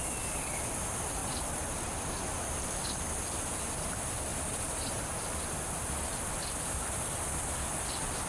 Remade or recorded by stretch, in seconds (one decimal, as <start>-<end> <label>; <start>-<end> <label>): 0.0-1.2 recorded; 1.2-1.8 remade; 1.8-4.3 recorded; 4.3-5.0 remade; 5.0-8.3 recorded